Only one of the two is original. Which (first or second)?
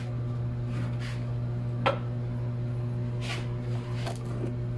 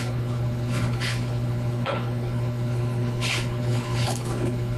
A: first